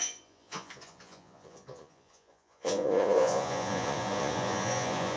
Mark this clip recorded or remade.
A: remade